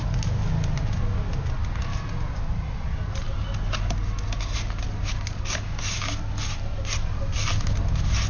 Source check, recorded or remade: recorded